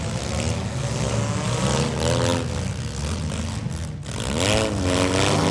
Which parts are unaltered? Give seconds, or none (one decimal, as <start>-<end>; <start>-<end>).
0.0-5.5